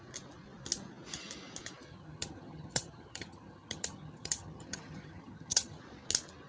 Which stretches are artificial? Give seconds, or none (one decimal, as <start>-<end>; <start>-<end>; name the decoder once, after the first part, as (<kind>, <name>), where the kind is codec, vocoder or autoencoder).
1.9-5.8 (vocoder, HiFi-GAN)